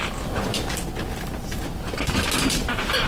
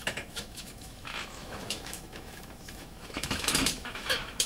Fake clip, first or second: second